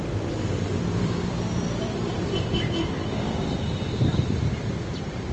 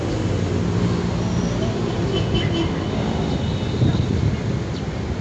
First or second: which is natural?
second